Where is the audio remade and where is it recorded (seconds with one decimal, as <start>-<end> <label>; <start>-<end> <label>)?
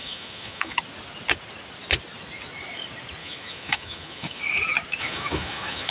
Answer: 0.0-0.8 remade; 0.8-3.2 recorded; 3.2-4.4 remade; 4.4-5.0 recorded; 5.0-5.9 remade